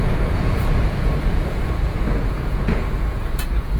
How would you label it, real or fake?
fake